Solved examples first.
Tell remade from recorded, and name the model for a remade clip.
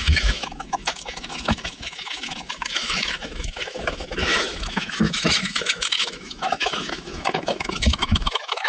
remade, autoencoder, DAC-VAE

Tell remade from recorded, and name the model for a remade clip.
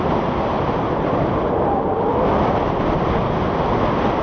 remade, vocoder, BigVGAN v2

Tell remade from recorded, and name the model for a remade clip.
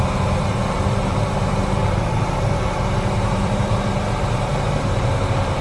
remade, vocoder, BigVGAN v2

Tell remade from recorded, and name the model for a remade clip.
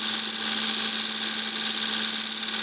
recorded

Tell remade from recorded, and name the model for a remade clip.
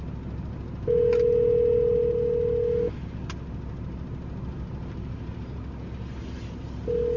recorded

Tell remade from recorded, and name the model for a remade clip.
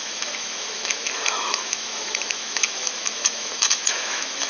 remade, autoencoder, DAC-VAE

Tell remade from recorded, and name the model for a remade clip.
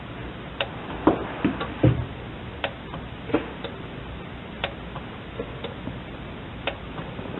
remade, vocoder, BigVGAN v2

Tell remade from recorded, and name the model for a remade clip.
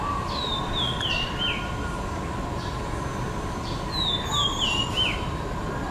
remade, vocoder, BigVGAN v2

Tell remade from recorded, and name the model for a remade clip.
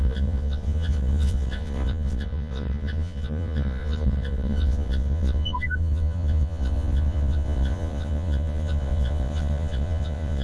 remade, vocoder, Vocos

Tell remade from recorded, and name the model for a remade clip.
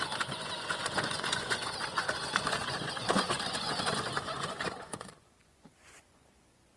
remade, vocoder, Vocos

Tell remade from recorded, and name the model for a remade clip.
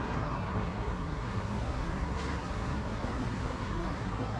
remade, codec, SNAC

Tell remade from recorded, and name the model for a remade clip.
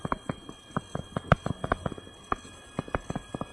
recorded